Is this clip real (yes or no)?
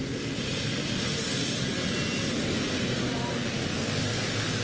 yes